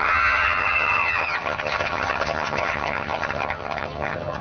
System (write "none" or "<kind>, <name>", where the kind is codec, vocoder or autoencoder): vocoder, HiFi-GAN